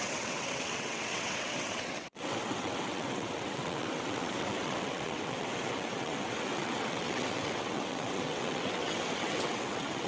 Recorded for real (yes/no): no